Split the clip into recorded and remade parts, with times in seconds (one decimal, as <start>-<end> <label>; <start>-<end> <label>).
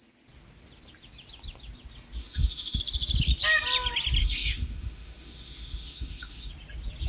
0.0-2.2 recorded; 2.2-2.8 remade; 2.8-4.2 recorded; 4.2-6.5 remade; 6.5-7.1 recorded